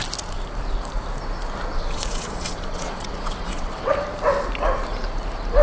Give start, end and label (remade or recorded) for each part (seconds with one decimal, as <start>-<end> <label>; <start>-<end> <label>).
0.0-1.7 recorded; 1.7-3.9 remade; 3.9-5.6 recorded